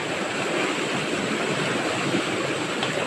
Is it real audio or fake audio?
real